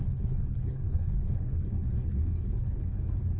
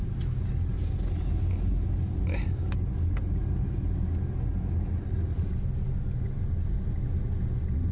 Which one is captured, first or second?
second